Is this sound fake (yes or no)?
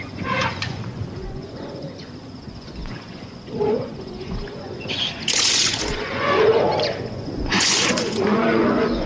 yes